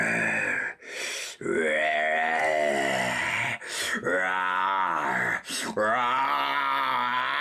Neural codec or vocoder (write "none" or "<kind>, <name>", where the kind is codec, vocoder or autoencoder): none